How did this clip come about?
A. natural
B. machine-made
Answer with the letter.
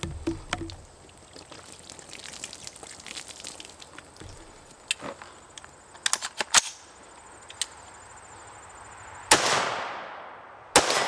A